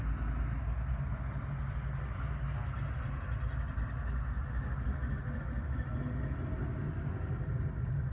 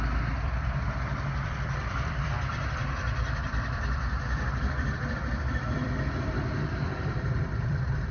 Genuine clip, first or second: first